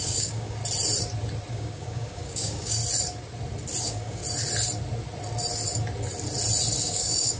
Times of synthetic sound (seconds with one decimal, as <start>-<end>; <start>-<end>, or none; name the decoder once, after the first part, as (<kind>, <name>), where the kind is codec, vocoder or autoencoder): 0.0-0.6 (codec, DAC); 1.5-2.8; 3.8-4.2; 6.8-7.4